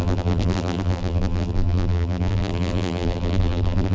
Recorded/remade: remade